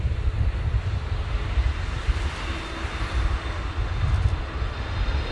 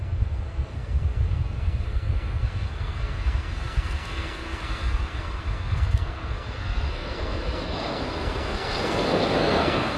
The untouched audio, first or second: first